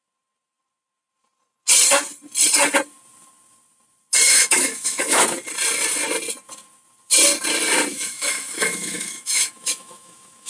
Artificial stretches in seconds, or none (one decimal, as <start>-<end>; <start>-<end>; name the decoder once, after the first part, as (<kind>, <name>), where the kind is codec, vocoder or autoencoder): 4.3-5.2 (autoencoder, DAC-VAE); 7.9-10.5